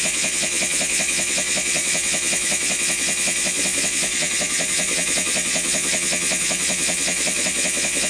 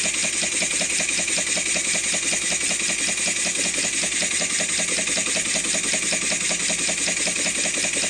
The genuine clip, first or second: second